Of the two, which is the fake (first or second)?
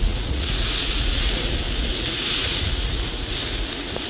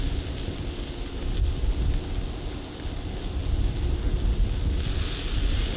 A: first